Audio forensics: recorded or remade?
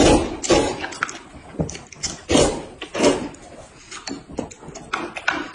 recorded